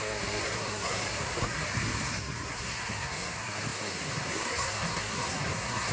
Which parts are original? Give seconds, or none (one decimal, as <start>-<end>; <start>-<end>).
none

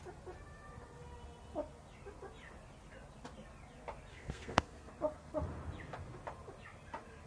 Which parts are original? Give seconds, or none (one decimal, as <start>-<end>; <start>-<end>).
0.0-4.1; 4.9-7.3

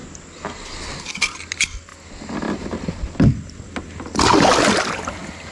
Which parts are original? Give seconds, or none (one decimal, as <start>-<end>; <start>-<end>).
0.0-5.5

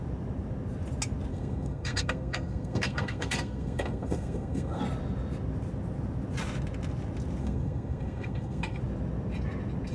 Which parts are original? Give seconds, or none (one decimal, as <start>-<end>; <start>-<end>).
0.0-1.3; 4.8-7.4; 8.8-9.9

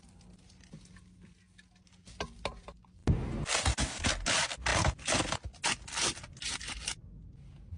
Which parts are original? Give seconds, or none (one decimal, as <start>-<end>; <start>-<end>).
0.0-7.8

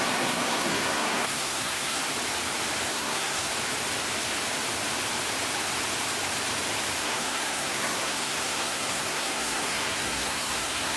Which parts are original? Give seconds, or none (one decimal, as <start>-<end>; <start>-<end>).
2.0-2.9; 3.5-7.0

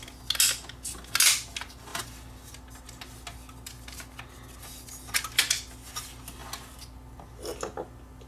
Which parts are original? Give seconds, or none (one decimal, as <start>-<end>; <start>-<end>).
0.0-8.3